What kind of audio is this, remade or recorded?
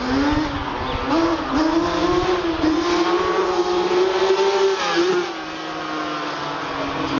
recorded